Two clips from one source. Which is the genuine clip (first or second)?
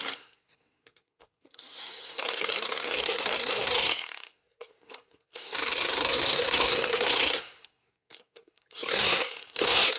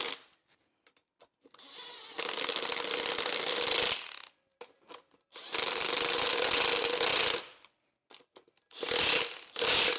second